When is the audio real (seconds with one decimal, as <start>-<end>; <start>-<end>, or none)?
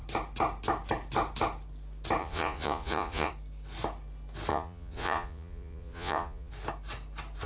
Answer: 0.0-2.2; 3.3-4.5; 6.5-7.5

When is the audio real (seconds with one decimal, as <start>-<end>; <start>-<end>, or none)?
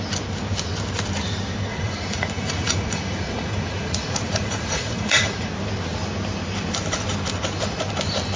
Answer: 0.0-1.7; 5.5-8.4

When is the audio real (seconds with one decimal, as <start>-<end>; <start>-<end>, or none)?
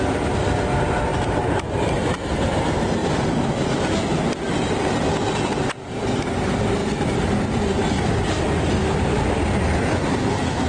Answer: 0.0-10.7